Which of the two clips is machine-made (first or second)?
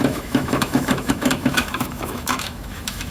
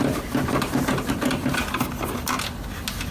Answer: first